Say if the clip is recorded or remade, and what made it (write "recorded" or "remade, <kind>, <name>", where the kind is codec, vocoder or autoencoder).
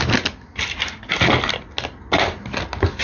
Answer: recorded